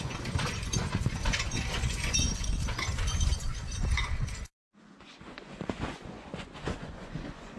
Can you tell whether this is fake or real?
fake